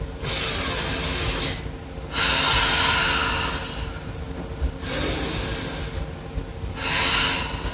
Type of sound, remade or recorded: recorded